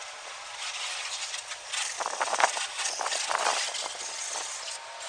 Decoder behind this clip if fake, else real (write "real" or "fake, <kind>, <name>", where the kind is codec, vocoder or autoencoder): real